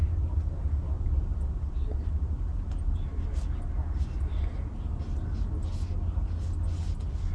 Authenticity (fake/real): real